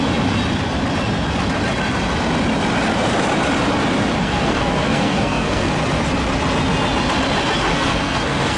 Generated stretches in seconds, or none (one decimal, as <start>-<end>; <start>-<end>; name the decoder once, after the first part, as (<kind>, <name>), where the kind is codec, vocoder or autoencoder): 4.2-5.7 (codec, SNAC); 7.7-8.6